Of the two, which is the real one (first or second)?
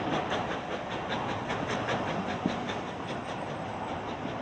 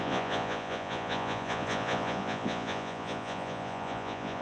first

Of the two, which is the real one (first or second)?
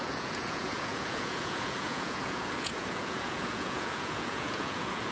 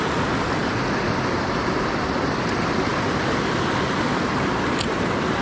second